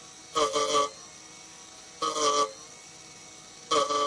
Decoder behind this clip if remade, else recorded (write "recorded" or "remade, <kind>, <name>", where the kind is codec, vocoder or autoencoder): recorded